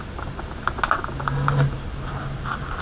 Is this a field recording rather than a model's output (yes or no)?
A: yes